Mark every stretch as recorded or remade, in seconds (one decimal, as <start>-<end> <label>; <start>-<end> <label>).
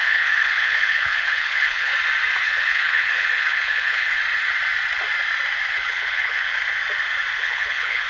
0.0-1.9 remade; 1.9-2.4 recorded; 2.4-4.2 remade; 4.2-5.7 recorded; 5.7-6.5 remade; 6.5-7.4 recorded; 7.4-8.1 remade